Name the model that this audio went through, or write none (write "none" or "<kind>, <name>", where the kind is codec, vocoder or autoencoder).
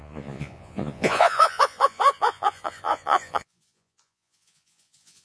vocoder, Vocos